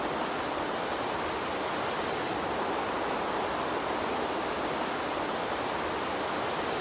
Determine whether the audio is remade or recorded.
recorded